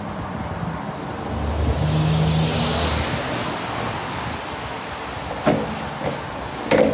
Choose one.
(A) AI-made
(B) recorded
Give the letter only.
B